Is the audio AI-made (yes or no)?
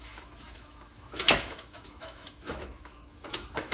yes